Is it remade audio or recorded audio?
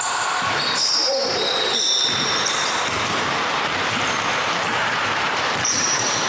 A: remade